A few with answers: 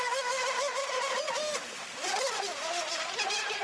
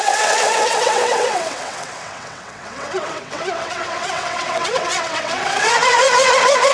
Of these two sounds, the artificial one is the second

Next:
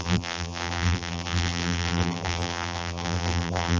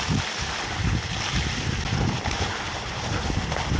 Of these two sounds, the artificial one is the first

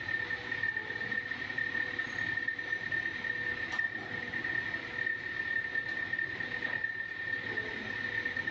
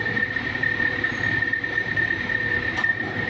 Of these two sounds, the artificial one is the second